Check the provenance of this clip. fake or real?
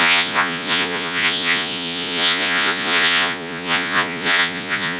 fake